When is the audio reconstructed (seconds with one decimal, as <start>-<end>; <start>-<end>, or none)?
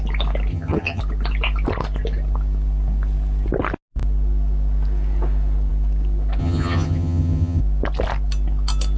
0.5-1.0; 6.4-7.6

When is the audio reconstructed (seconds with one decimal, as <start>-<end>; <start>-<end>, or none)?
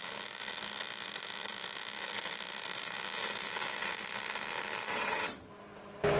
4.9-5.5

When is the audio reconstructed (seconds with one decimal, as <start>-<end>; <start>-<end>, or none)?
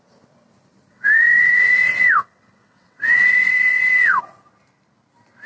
0.9-4.2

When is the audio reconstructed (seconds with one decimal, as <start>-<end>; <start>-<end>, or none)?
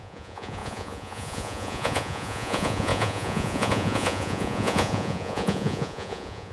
0.0-6.5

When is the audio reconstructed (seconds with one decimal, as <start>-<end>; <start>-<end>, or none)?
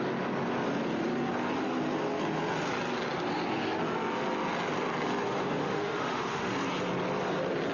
5.6-6.5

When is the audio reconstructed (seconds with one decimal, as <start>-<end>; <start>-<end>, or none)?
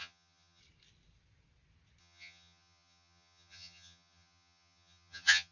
0.0-0.6; 2.0-5.5